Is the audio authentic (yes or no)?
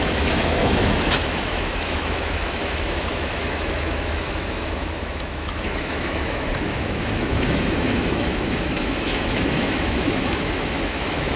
no